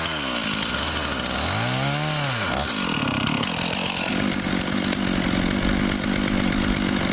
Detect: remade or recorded recorded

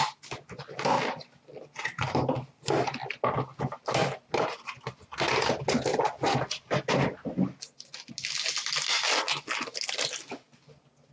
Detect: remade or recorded recorded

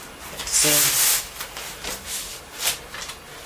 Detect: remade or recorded recorded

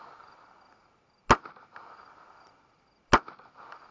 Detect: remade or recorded recorded